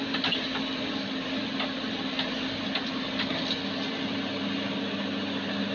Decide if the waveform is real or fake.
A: real